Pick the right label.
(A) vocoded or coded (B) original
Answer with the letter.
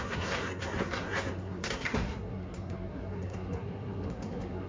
A